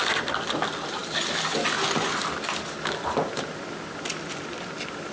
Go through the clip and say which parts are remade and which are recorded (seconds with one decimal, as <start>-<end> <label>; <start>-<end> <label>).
0.0-5.1 recorded